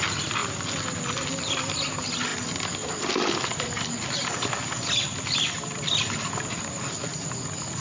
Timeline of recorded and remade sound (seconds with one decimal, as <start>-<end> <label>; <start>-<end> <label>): 0.0-7.8 recorded